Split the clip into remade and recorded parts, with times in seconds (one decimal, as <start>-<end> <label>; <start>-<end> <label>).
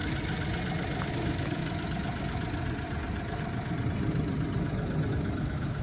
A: 0.0-1.1 recorded; 1.1-1.6 remade; 1.6-5.1 recorded; 5.1-5.8 remade